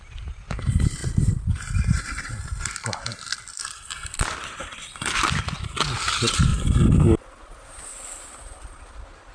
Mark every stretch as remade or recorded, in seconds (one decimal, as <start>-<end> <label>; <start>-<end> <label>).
0.0-9.3 recorded